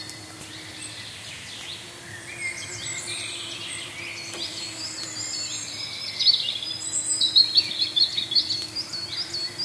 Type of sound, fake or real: real